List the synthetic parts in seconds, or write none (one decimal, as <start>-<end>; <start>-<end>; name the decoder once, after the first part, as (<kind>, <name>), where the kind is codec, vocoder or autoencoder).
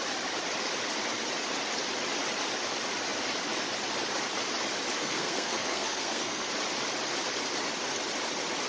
5.0-6.5 (codec, SNAC)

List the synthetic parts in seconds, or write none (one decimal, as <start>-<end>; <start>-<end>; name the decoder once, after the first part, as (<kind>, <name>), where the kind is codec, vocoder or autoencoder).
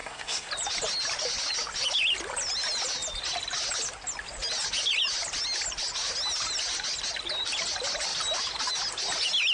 0.0-0.5 (codec, SNAC)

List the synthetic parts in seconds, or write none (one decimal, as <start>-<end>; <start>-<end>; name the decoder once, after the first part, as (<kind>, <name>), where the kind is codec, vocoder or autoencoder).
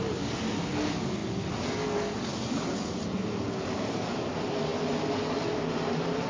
none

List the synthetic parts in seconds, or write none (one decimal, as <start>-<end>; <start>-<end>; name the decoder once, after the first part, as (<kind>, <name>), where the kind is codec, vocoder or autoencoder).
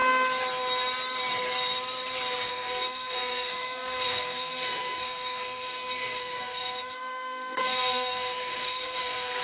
2.5-9.4 (codec, SNAC)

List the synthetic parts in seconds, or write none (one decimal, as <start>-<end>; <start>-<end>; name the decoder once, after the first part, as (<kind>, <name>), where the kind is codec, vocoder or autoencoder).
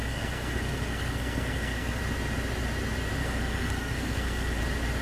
0.0-2.0 (codec, SNAC); 3.2-4.6